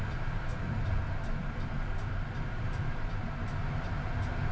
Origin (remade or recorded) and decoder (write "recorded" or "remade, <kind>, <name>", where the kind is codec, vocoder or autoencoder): recorded